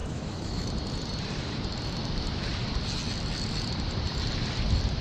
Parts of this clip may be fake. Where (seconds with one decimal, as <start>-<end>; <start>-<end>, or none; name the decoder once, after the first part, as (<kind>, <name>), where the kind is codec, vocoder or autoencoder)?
0.0-0.7 (autoencoder, DAC-VAE)